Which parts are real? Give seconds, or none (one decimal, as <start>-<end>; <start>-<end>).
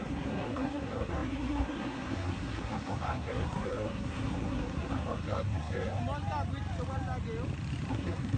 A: 6.0-7.9